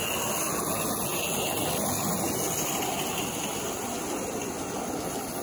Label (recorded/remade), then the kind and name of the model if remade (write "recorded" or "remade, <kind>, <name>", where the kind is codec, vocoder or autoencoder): recorded